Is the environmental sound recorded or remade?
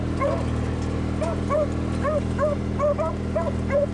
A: recorded